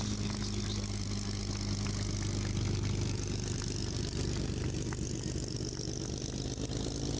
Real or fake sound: real